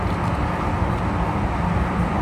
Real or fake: real